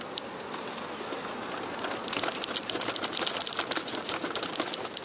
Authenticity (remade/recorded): recorded